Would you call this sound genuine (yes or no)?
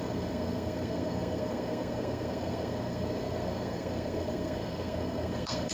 no